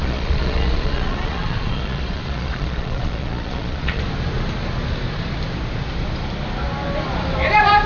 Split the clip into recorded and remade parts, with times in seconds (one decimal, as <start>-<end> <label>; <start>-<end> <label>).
0.0-4.0 remade; 4.0-7.9 recorded